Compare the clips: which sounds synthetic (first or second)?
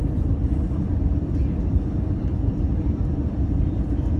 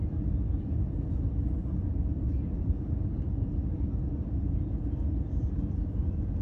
first